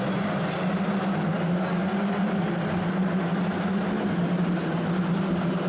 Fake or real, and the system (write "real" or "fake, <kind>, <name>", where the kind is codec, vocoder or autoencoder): real